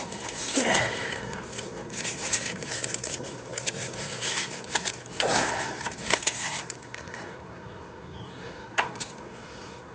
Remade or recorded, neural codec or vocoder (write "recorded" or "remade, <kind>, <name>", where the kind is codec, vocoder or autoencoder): remade, codec, SNAC